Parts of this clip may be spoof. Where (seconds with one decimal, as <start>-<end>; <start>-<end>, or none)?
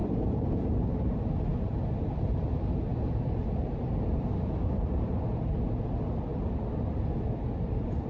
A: 0.0-0.8; 1.5-4.9; 6.3-8.1